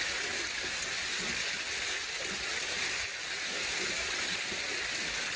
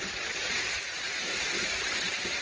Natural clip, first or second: first